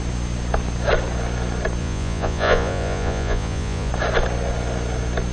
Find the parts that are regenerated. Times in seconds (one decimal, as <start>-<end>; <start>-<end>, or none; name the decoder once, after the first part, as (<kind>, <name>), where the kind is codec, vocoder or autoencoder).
1.8-3.9 (vocoder, Vocos)